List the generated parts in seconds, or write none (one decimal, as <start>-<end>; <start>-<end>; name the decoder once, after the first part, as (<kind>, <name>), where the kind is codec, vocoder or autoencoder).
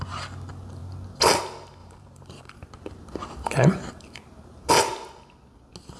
1.8-4.7 (vocoder, BigVGAN v2)